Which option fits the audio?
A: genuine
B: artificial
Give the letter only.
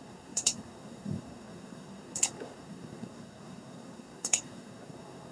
B